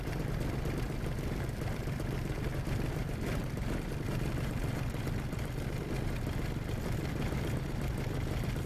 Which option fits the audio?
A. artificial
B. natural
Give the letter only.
A